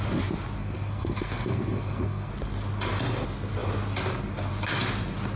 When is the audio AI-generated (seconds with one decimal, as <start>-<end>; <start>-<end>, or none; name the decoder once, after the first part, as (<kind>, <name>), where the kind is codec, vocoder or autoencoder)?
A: 0.6-2.3 (codec, SNAC)